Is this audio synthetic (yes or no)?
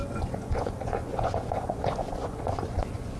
yes